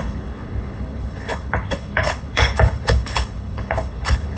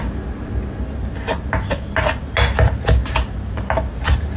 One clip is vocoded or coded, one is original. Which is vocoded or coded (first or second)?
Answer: first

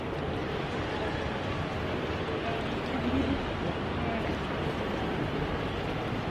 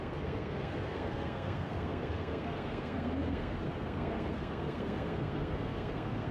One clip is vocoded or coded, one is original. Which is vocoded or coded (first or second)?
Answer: second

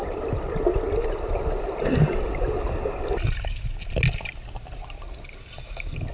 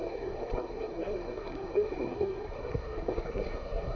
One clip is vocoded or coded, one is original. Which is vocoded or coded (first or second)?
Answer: second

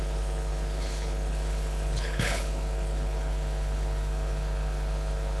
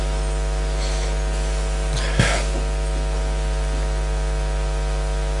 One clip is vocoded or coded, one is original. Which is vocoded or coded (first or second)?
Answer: first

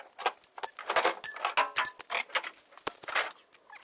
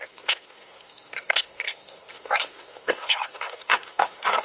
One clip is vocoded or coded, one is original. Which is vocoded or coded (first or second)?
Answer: second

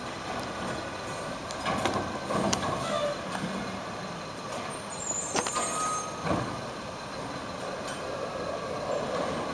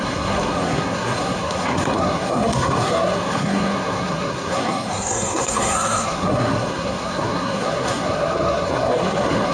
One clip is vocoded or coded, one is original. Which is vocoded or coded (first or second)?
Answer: second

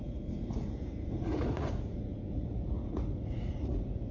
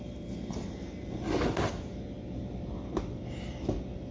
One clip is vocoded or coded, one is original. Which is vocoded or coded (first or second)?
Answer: first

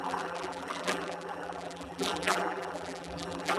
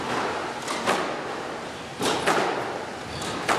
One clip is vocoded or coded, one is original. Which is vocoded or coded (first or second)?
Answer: first